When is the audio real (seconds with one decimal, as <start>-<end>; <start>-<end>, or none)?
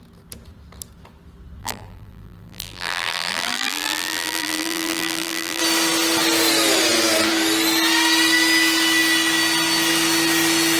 0.0-1.6; 5.6-10.8